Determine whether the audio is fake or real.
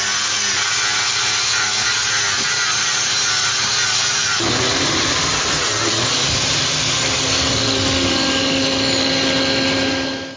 real